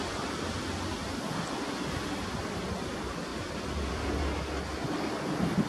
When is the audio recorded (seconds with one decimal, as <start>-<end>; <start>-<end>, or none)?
0.0-3.3; 4.2-5.7